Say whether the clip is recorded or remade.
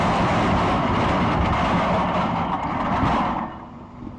recorded